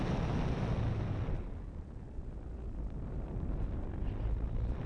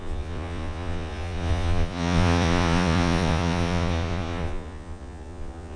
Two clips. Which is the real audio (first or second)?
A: first